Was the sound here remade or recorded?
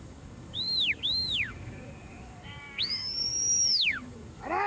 remade